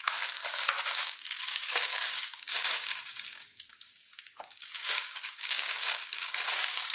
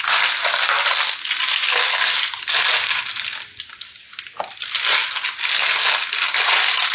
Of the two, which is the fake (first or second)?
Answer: first